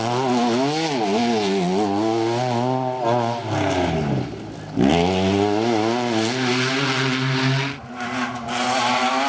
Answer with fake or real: real